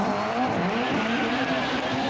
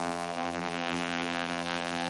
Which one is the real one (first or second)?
first